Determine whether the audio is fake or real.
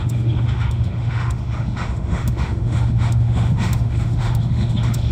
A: fake